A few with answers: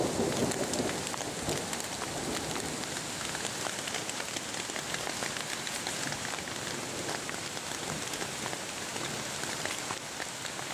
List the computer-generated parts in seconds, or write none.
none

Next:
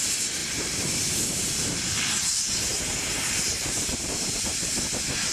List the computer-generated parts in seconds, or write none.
0.4-1.8; 2.7-4.6

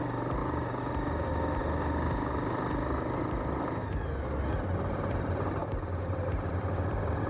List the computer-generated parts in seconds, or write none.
5.6-6.5

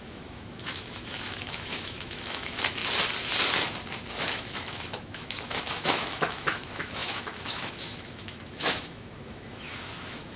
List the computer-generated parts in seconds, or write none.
0.0-2.8; 4.1-10.4

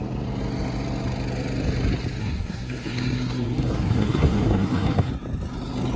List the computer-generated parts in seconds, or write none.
2.2-5.1